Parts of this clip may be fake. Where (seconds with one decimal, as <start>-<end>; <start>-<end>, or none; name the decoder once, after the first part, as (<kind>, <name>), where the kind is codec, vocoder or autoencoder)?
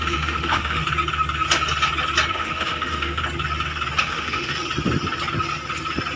0.0-0.8 (autoencoder, DAC-VAE); 2.3-3.2; 4.0-4.5